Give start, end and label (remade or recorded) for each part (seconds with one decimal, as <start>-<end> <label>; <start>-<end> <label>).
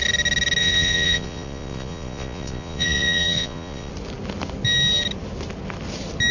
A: 0.0-0.6 recorded; 0.6-3.9 remade; 3.9-6.3 recorded